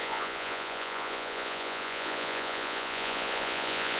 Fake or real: fake